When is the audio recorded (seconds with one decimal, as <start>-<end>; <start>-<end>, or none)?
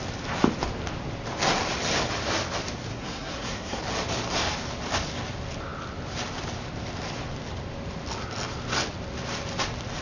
0.0-2.9; 3.8-10.0